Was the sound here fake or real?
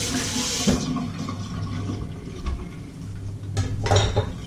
real